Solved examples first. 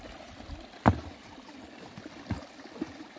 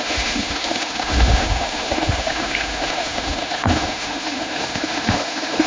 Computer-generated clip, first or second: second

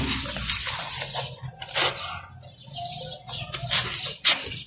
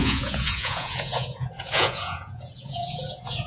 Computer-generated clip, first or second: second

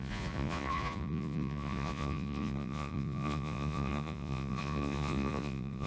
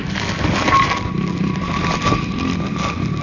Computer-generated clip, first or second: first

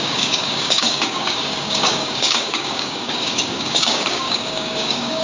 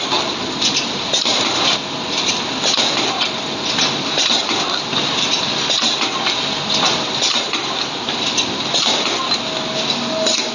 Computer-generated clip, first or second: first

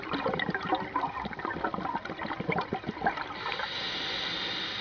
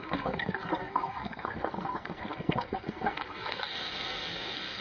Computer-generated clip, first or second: second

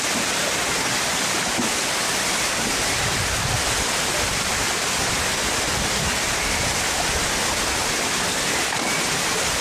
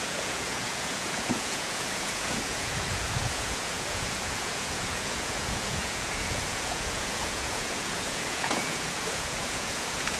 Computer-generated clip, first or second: second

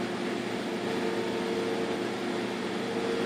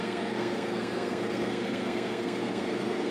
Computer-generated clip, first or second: second